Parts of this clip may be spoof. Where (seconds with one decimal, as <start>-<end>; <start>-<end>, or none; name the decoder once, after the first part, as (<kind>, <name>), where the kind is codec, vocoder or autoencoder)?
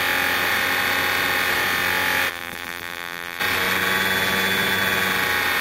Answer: 2.3-3.4 (vocoder, BigVGAN v2)